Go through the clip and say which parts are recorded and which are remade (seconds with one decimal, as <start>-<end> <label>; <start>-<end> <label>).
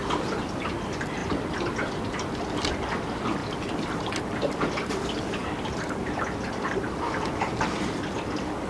0.0-8.7 recorded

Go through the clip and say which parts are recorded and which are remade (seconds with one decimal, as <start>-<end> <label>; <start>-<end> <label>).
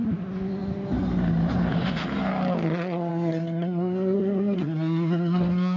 0.0-3.1 recorded; 3.1-5.8 remade